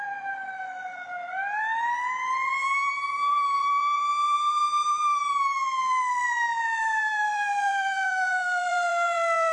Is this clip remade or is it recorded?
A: remade